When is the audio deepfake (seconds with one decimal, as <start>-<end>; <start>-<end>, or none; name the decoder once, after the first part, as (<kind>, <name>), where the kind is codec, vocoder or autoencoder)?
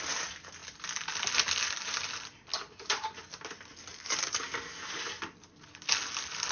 none